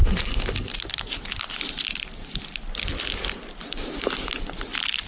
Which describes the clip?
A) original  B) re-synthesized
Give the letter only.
A